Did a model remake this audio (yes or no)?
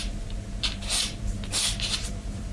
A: yes